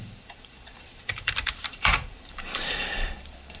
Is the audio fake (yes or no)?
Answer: yes